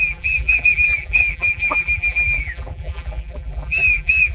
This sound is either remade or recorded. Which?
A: remade